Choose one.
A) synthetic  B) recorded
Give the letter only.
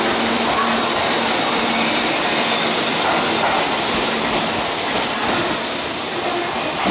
B